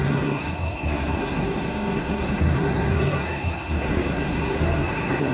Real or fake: fake